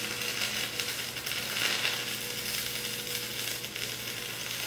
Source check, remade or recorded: recorded